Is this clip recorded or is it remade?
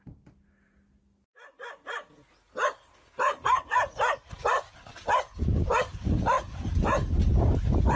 recorded